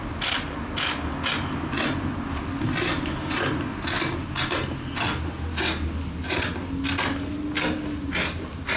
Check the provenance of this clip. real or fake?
real